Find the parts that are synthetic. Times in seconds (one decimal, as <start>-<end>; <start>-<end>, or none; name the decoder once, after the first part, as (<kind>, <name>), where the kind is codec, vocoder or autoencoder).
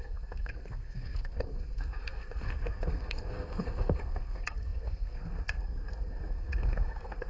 0.0-7.3 (codec, SNAC)